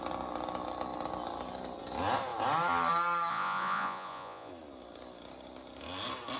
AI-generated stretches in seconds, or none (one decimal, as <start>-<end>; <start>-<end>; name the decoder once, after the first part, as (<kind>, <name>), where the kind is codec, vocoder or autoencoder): 3.3-4.5 (vocoder, Vocos)